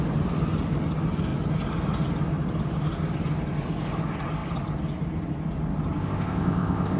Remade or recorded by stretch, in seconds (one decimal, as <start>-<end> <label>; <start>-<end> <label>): 0.0-6.0 recorded; 6.0-7.0 remade